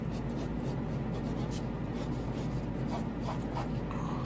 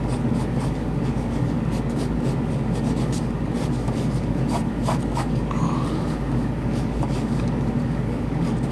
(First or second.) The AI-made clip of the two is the second